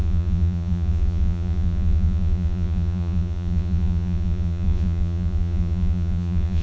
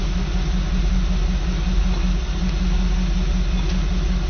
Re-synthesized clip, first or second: first